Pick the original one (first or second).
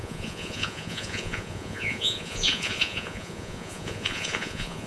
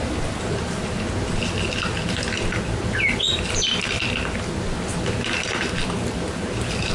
second